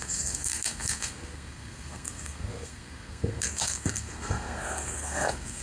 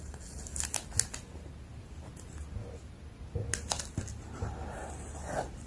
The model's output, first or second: first